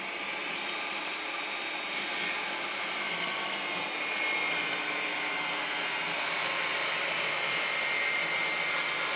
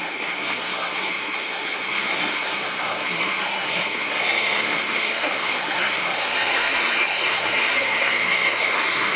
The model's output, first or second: second